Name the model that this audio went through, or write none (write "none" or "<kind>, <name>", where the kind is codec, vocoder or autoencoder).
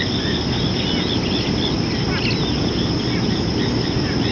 none